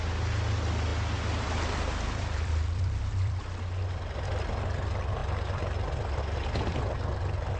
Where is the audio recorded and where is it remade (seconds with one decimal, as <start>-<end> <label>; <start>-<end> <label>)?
0.0-0.9 recorded; 0.9-3.4 remade; 3.4-7.6 recorded